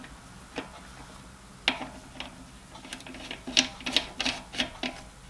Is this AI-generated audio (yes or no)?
no